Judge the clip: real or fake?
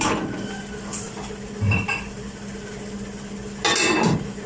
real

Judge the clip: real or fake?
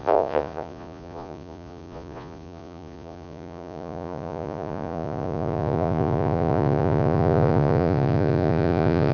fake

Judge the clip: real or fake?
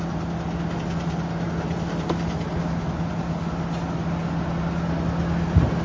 real